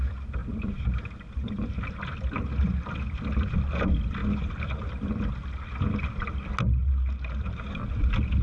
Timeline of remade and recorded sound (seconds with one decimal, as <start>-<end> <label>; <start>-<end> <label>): 0.0-0.4 recorded; 0.4-1.8 remade; 1.8-4.2 recorded; 4.2-5.1 remade; 5.1-6.8 recorded; 6.8-7.9 remade; 7.9-8.4 recorded